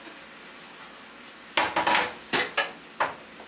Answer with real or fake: real